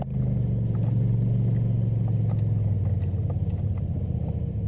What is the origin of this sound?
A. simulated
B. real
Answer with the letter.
B